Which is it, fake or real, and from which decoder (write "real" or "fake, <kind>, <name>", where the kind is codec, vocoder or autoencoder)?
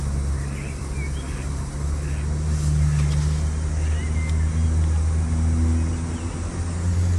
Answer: real